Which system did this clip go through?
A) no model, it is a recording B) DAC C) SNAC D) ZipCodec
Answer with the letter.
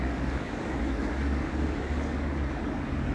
B